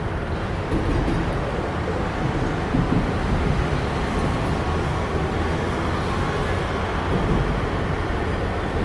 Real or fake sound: real